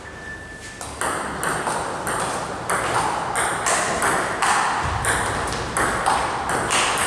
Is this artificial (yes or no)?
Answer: no